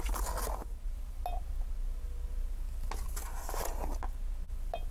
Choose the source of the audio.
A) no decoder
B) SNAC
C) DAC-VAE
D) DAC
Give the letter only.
A